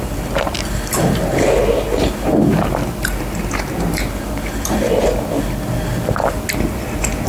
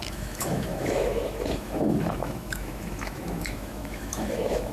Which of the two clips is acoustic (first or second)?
first